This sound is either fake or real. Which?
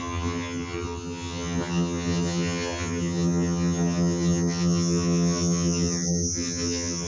fake